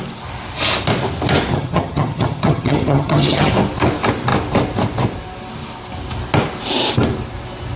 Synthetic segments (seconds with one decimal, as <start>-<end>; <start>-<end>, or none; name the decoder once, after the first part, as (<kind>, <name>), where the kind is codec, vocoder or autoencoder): 1.5-3.5 (vocoder, HiFi-GAN)

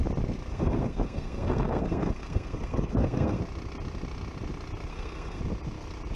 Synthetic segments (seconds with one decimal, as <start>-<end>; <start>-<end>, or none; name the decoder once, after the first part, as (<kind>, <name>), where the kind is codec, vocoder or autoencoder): 0.5-3.4 (codec, SNAC); 4.9-5.4